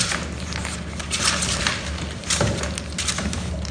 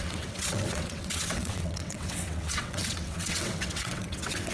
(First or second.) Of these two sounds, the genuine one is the first